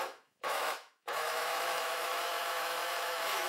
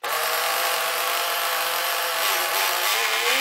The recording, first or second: second